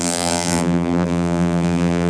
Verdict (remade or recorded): remade